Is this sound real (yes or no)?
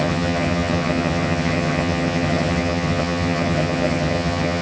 no